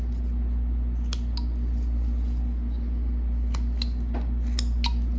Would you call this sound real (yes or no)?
yes